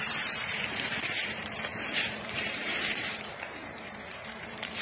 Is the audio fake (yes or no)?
yes